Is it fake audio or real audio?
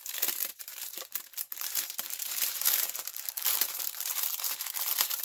fake